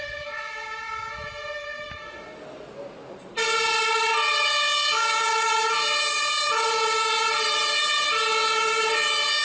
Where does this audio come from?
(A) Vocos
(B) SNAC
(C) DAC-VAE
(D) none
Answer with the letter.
D